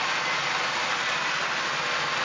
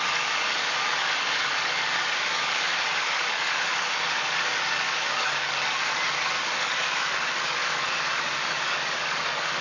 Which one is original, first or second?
first